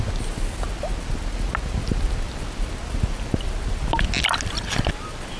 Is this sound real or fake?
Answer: real